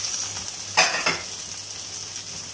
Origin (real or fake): real